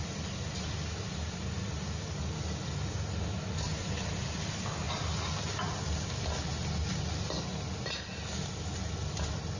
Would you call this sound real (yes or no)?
yes